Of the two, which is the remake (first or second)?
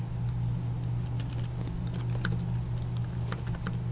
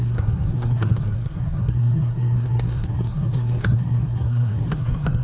second